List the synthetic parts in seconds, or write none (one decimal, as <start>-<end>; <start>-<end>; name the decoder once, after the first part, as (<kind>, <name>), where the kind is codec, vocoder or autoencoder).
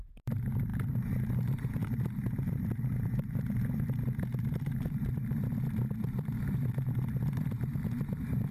0.0-8.5 (vocoder, BigVGAN v2)